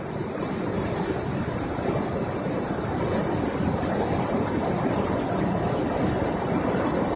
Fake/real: real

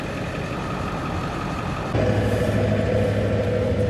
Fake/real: real